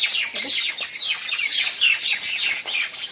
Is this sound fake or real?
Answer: real